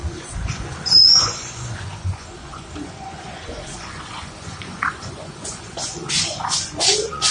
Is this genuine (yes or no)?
no